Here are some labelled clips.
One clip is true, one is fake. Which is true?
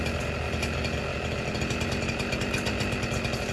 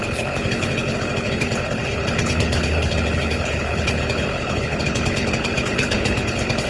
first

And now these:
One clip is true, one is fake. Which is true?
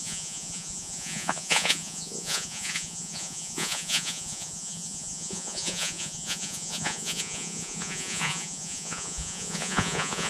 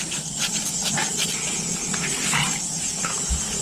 second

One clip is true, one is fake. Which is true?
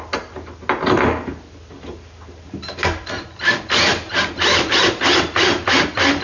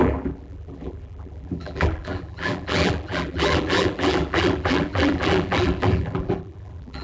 first